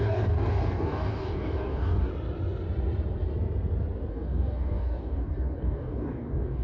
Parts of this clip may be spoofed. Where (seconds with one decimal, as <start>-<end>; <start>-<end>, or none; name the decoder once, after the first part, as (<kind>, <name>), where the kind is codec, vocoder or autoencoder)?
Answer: 0.0-2.1 (codec, DAC); 4.1-6.6